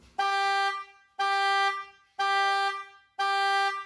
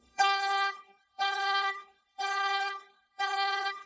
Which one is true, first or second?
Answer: first